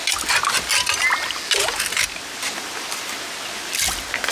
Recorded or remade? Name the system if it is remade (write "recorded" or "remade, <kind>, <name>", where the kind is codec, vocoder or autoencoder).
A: recorded